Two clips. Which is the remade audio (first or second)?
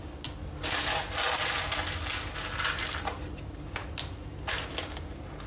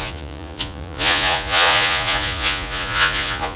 second